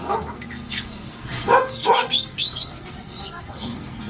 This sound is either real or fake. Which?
fake